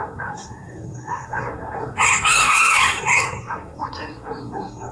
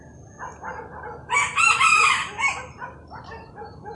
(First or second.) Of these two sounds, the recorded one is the second